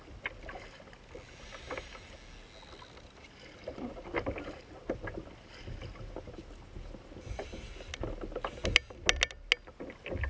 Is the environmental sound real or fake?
real